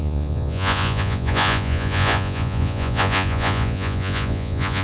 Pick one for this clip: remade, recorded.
remade